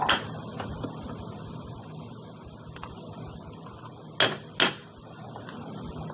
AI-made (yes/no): no